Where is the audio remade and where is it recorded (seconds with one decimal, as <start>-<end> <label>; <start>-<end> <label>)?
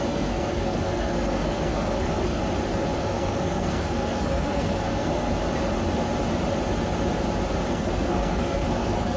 0.0-2.4 remade; 2.4-3.0 recorded; 3.0-5.3 remade; 5.3-7.7 recorded; 7.7-9.2 remade